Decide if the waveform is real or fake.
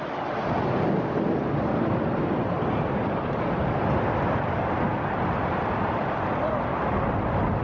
real